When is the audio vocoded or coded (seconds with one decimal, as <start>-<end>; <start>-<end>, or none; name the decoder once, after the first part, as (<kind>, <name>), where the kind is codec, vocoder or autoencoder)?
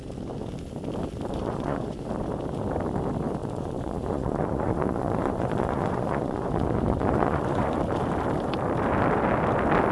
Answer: 1.4-2.0 (vocoder, Vocos); 3.4-7.8